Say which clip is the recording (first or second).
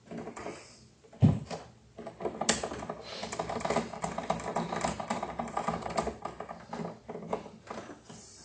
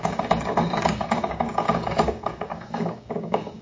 first